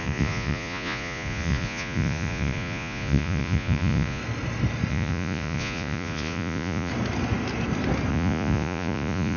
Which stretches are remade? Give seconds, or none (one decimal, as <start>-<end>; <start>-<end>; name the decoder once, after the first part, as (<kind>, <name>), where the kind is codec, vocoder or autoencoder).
0.0-4.2 (vocoder, Vocos); 4.9-6.9; 8.1-9.4